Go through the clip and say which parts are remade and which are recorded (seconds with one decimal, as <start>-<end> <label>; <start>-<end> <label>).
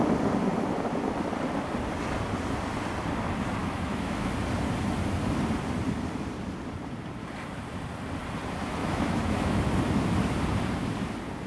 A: 0.0-3.6 recorded; 3.6-4.3 remade; 4.3-8.8 recorded; 8.8-9.6 remade; 9.6-11.5 recorded